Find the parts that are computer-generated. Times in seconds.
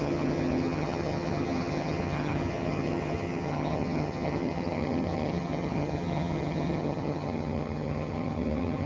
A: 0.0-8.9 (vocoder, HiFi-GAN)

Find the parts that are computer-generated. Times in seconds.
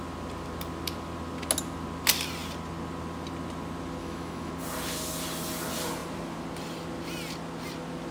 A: 4.0-4.5 (autoencoder, DAC-VAE)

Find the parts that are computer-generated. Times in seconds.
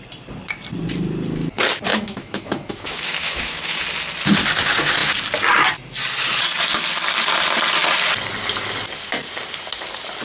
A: 1.9-3.8 (autoencoder, DAC-VAE)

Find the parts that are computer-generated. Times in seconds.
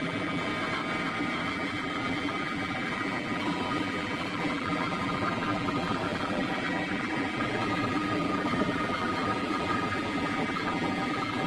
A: 0.0-0.5 (vocoder, BigVGAN v2); 1.5-11.5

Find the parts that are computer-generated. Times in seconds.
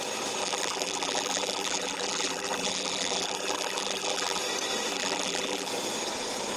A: 0.4-4.4 (vocoder, BigVGAN v2); 4.9-5.7